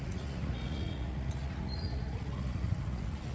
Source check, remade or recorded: remade